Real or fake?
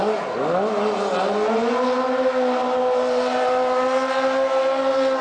real